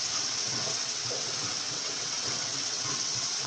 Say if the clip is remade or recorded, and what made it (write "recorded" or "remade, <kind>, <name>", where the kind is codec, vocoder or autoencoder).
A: remade, vocoder, WaveNeXt